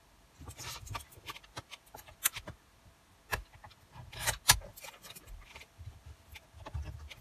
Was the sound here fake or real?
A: real